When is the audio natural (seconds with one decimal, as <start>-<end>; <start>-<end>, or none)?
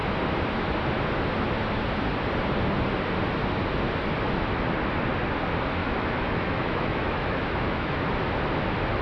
0.0-5.8; 8.0-9.0